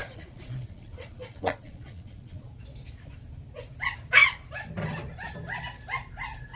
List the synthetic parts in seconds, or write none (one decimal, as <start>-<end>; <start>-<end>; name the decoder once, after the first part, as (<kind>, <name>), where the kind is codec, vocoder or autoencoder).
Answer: 0.0-2.5 (vocoder, Vocos)